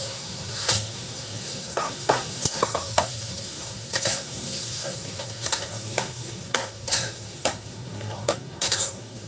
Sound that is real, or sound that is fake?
fake